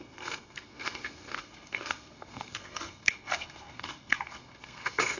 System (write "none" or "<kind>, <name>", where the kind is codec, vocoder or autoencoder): codec, SNAC